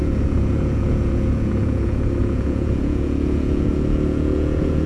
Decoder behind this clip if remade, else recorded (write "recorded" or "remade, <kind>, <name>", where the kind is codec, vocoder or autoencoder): remade, vocoder, Vocos